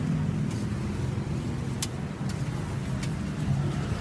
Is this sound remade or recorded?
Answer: recorded